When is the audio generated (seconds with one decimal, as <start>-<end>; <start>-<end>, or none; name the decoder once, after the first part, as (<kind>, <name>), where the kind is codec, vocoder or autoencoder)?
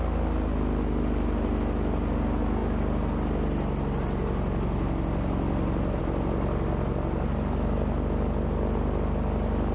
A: none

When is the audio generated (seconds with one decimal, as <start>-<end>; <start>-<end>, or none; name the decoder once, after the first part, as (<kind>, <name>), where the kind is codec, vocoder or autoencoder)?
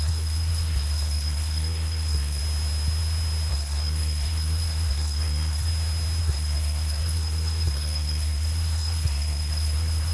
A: 0.0-2.4 (codec, SNAC); 3.5-5.7; 6.2-10.1